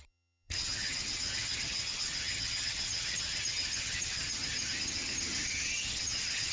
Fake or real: fake